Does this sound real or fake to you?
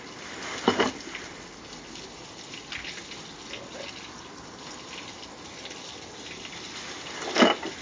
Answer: real